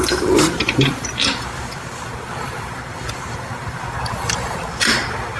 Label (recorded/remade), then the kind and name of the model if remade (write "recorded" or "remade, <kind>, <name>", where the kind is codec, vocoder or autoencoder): remade, vocoder, BigVGAN v2